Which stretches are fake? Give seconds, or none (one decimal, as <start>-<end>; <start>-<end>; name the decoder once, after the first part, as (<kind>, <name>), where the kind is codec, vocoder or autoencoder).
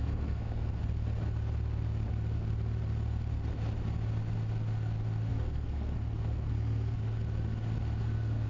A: 0.0-0.8 (codec, SNAC); 5.3-7.0; 8.0-8.5